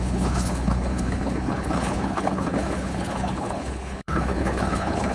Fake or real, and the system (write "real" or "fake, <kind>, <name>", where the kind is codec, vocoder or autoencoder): fake, codec, HILCodec